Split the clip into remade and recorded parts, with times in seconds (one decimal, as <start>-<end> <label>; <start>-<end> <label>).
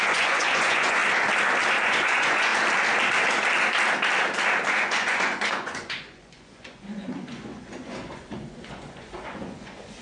0.0-1.0 remade; 1.0-1.8 recorded; 1.8-2.5 remade; 2.5-4.7 recorded; 4.7-10.0 remade